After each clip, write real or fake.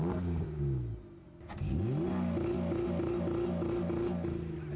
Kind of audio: real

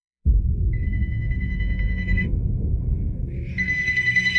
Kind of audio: fake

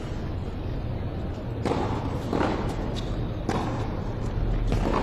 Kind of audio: real